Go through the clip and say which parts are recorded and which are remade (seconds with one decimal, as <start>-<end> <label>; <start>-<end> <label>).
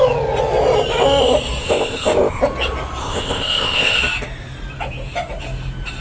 0.0-1.6 recorded; 1.6-2.4 remade; 2.4-3.0 recorded; 3.0-4.0 remade; 4.0-6.0 recorded